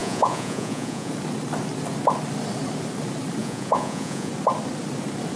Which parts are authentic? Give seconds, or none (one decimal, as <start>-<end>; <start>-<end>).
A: 1.1-3.4; 4.3-5.4